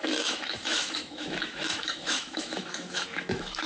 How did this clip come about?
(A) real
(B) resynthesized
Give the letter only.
B